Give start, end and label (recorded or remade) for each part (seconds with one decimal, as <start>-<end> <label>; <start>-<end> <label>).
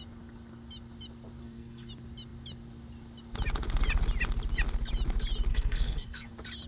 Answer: 0.0-1.4 recorded; 1.4-1.9 remade; 1.9-5.5 recorded; 5.5-6.3 remade; 6.3-6.7 recorded